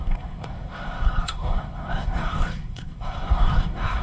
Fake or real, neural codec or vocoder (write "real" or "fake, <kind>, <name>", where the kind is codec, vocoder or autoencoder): fake, codec, SNAC